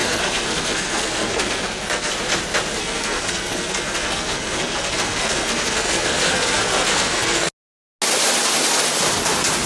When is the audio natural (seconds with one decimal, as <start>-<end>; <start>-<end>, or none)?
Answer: 2.1-2.8; 7.5-9.7